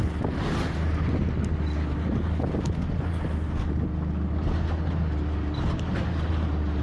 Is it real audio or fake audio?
real